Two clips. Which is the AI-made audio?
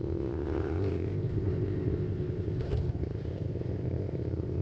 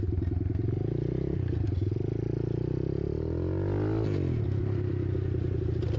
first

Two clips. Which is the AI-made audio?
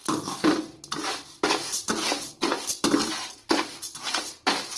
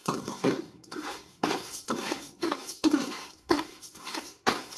second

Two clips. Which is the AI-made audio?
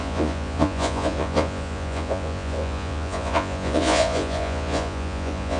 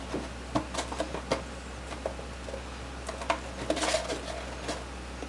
first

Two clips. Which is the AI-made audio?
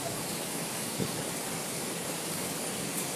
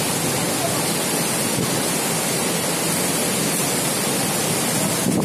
first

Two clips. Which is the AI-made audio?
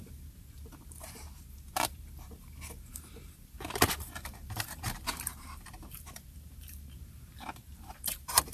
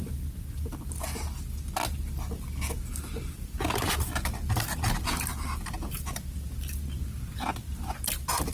first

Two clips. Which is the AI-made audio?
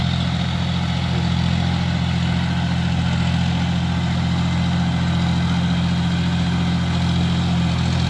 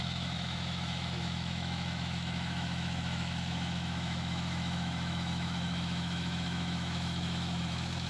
second